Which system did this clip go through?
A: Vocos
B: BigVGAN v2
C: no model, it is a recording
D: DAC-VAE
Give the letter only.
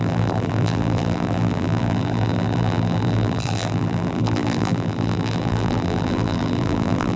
B